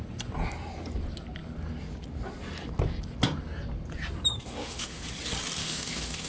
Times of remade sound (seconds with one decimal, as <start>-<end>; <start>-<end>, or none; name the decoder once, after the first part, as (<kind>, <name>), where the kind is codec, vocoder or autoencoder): 4.3-5.0 (autoencoder, DAC-VAE); 5.6-6.3